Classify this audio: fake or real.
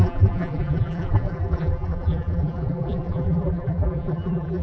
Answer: fake